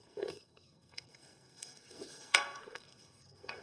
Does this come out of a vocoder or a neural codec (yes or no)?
yes